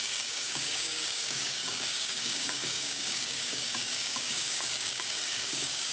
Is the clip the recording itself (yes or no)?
no